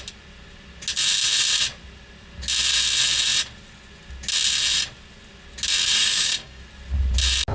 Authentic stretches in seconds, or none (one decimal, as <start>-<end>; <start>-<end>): 0.0-5.9; 6.6-7.5